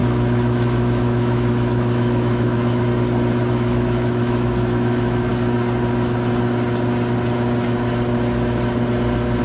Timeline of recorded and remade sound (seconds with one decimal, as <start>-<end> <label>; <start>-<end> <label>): 0.0-2.9 remade; 2.9-3.5 recorded; 3.5-5.3 remade; 5.3-9.4 recorded